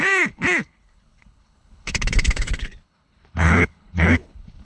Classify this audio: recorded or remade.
remade